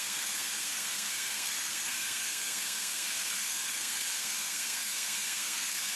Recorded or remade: remade